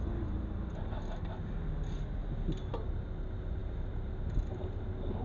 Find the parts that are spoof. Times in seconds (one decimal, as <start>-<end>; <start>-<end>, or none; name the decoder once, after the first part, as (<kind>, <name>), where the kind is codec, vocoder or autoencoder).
none